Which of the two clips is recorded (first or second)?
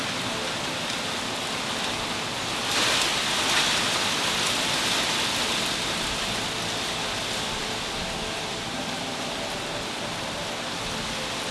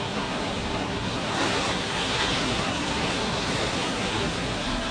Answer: first